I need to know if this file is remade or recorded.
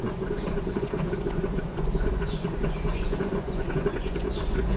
remade